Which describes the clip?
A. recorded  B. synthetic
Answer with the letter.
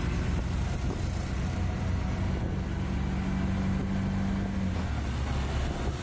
A